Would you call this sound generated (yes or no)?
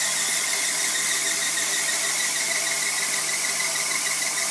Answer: no